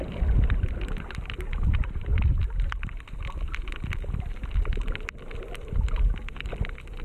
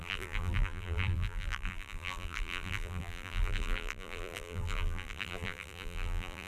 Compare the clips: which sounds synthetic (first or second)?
second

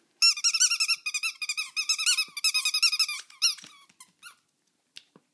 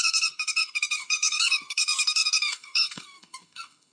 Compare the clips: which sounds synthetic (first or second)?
second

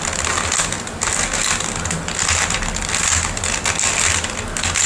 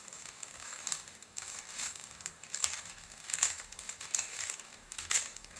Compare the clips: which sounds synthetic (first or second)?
second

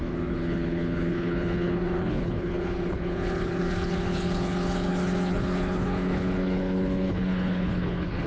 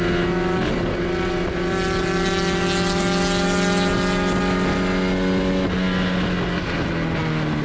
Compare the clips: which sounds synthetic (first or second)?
first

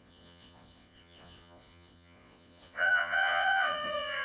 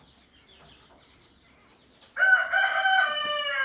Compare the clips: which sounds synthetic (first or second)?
first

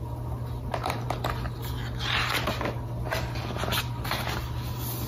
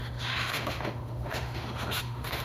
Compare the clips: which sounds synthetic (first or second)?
second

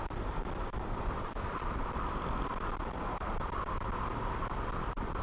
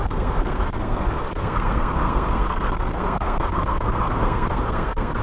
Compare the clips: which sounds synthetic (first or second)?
second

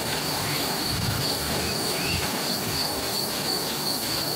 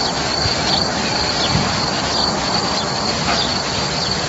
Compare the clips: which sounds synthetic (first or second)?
first